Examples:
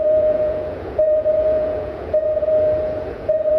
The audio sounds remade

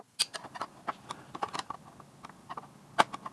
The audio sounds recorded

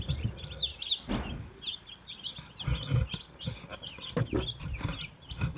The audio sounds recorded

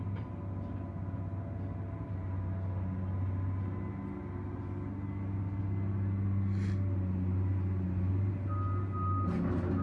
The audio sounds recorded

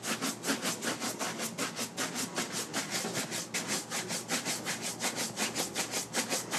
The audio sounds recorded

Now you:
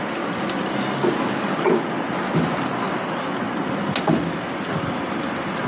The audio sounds recorded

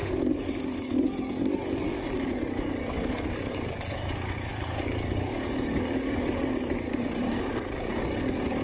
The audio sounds remade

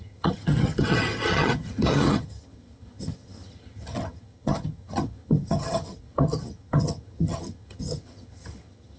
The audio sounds remade